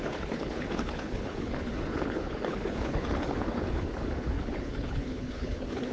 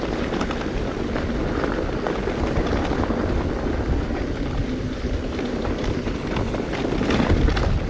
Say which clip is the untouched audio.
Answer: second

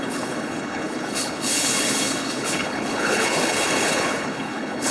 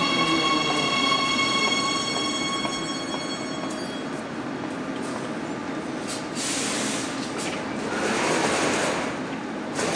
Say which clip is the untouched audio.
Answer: second